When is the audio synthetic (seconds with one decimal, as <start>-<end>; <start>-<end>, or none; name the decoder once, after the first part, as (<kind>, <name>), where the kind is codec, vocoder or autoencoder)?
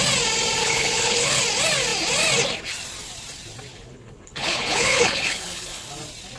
0.6-1.4 (codec, HILCodec); 3.7-5.9